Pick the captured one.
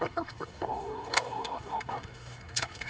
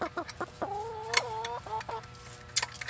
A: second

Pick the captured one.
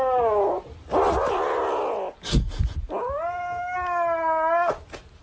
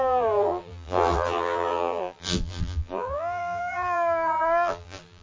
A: first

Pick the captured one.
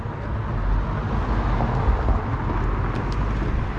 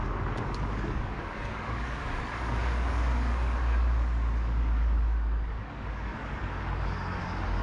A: first